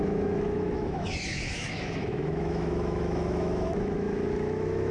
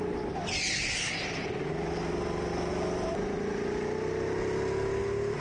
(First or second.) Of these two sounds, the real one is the second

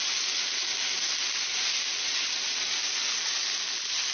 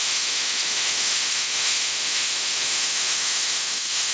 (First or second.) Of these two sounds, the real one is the first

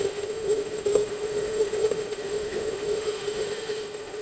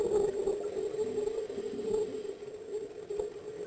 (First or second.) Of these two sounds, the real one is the second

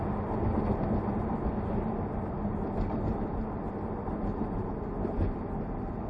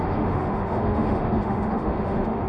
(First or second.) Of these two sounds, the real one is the first